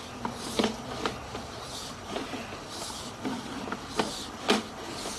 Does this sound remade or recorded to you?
recorded